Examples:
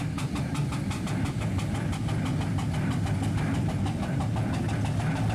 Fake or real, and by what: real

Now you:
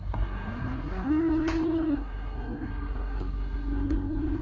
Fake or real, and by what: fake, codec, SNAC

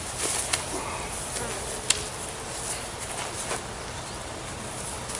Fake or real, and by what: real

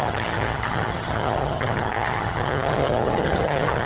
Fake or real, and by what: fake, vocoder, HiFi-GAN